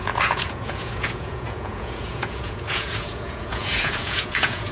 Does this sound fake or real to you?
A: fake